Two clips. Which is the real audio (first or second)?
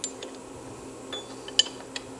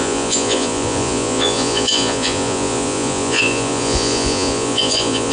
first